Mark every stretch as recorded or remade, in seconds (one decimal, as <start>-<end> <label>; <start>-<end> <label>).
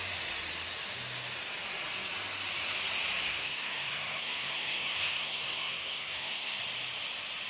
0.0-3.2 recorded; 3.2-6.6 remade; 6.6-7.5 recorded